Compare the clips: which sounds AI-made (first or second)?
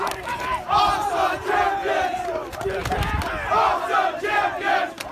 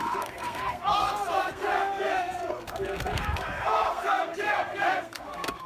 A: second